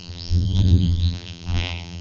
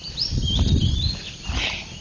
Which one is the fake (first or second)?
first